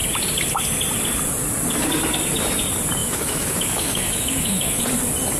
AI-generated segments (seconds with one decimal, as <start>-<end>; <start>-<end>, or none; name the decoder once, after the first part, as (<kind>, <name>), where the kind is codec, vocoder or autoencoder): 3.0-4.8 (autoencoder, DAC-VAE)